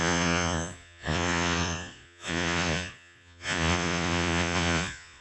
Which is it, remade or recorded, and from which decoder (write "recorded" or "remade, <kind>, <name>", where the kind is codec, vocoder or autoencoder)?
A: remade, vocoder, Vocos